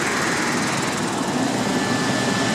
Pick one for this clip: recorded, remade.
recorded